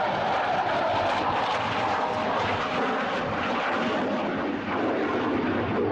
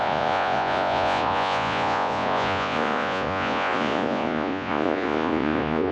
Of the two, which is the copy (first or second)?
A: second